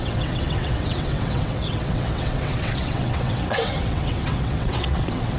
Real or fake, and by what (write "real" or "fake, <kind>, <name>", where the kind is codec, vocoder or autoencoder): fake, vocoder, WaveNeXt